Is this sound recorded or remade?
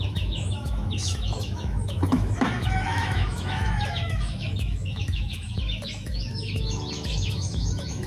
remade